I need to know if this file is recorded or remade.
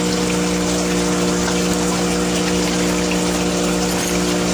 recorded